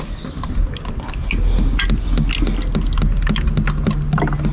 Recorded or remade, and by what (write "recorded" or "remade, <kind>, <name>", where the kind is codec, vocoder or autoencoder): recorded